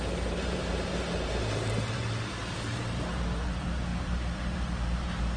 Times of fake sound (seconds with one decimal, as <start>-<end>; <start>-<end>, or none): 0.0-5.4